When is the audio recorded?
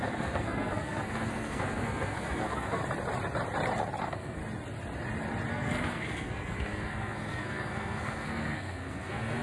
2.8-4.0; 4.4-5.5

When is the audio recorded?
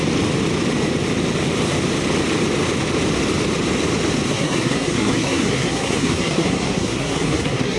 0.0-4.3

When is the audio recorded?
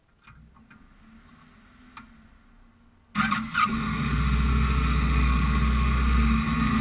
0.0-3.6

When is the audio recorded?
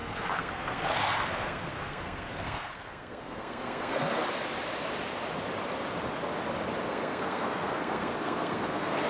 4.2-6.9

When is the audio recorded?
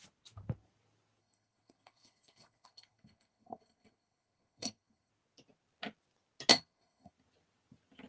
0.0-1.2; 5.1-6.5; 7.1-8.1